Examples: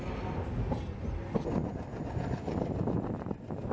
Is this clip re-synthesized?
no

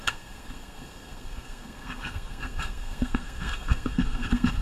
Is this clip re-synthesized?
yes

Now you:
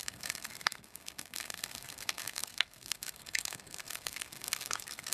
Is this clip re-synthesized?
yes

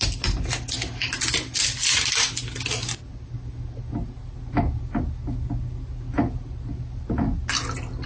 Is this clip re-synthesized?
no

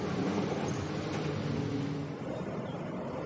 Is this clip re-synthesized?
no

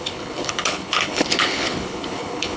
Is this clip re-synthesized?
yes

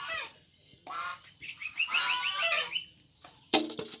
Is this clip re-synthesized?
no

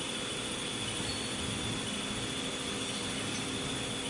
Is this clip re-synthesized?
no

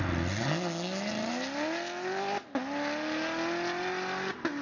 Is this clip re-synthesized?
no